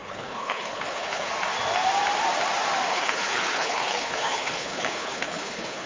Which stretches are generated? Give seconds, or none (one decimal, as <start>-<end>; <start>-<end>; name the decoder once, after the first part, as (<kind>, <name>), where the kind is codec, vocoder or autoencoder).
0.0-1.3 (codec, HILCodec); 2.9-5.9